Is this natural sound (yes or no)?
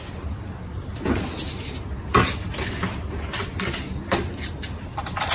yes